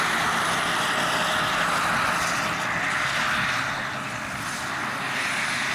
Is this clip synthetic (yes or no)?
no